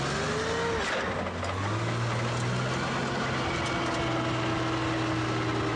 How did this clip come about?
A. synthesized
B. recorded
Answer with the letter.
B